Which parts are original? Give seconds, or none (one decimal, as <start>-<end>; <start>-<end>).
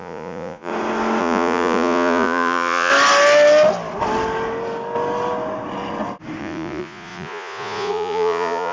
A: 0.7-1.2; 2.9-6.4